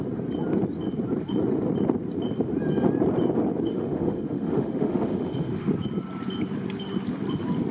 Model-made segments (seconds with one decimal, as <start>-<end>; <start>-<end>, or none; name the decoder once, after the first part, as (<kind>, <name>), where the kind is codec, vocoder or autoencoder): 3.7-5.7 (autoencoder, DAC-VAE)